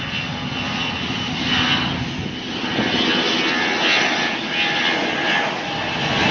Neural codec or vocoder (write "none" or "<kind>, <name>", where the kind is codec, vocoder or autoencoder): none